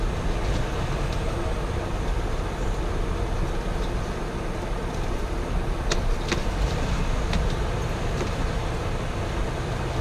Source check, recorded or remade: recorded